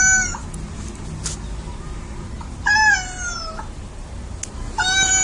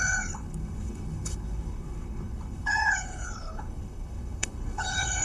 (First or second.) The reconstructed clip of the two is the second